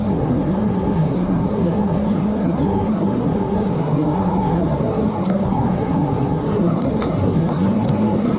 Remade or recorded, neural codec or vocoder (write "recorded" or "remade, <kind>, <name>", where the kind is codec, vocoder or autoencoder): remade, codec, SNAC